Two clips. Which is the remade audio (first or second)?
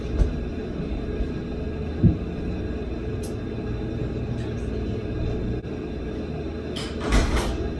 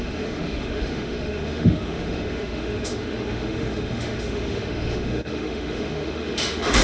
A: second